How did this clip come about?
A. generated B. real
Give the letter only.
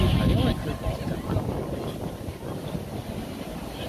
B